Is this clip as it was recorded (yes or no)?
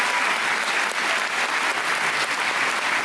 yes